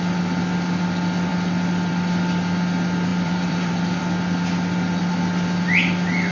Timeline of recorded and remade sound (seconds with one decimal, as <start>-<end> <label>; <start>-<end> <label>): 0.0-3.1 recorded; 3.1-4.0 remade; 4.0-6.3 recorded